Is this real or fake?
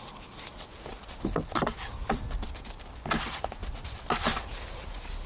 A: real